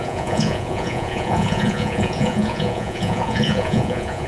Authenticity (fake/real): fake